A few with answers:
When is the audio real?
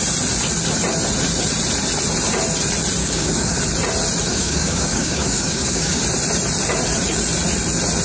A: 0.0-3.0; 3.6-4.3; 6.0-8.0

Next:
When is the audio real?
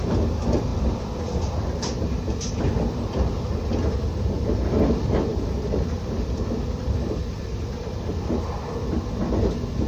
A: 0.0-0.7; 2.6-5.3; 7.4-9.9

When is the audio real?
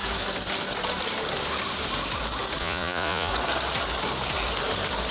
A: 0.0-2.6; 3.3-5.1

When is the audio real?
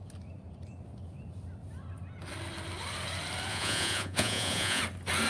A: 0.0-3.5; 4.8-5.3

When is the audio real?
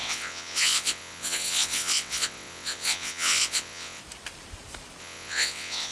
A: 4.0-5.0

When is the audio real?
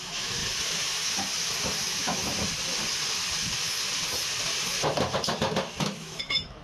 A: 0.4-1.8; 2.2-5.8